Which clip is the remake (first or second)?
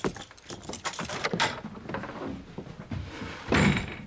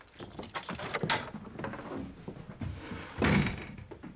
first